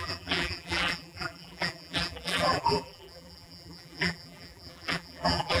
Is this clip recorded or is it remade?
remade